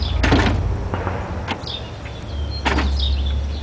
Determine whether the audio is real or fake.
real